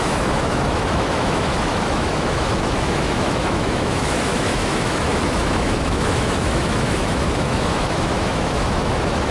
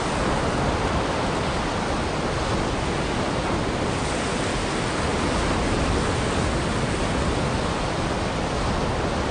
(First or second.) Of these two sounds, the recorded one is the second